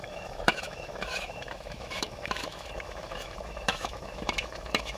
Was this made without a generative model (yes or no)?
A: no